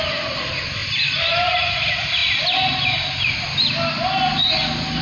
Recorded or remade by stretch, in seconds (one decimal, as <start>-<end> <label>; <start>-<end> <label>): 0.0-5.0 recorded